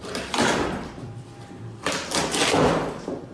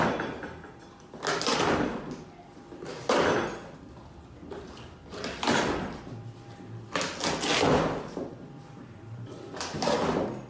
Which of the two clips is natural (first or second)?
second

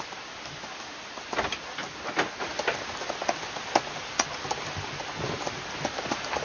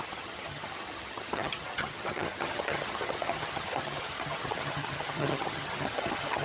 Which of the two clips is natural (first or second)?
first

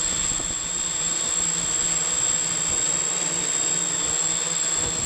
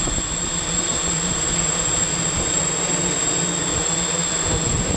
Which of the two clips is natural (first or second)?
first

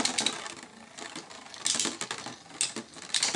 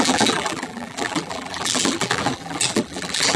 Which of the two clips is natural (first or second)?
first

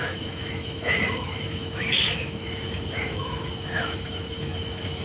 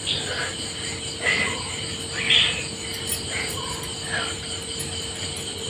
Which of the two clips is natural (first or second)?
second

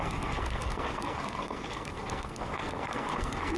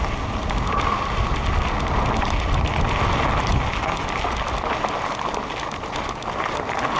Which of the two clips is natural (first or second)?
second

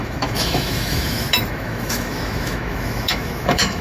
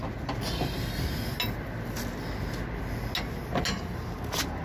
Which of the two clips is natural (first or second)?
second